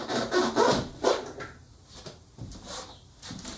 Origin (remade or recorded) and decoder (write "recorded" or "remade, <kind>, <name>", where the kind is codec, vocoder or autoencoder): recorded